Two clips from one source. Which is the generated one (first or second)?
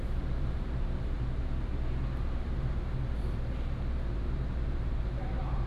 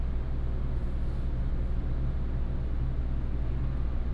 first